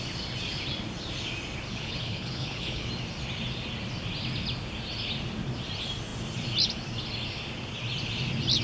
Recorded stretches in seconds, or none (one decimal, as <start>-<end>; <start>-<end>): 0.0-1.7; 2.9-8.6

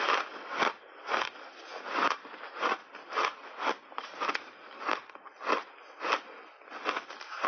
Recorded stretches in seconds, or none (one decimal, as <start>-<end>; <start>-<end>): 0.0-7.5